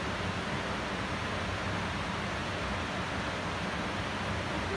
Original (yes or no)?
yes